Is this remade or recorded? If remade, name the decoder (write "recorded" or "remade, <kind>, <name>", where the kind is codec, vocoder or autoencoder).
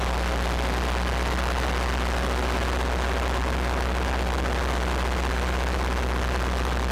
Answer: recorded